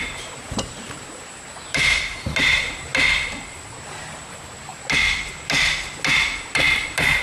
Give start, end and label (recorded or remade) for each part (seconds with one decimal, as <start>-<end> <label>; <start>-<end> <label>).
0.0-2.9 remade; 2.9-3.8 recorded; 3.8-4.7 remade; 4.7-6.4 recorded; 6.4-7.2 remade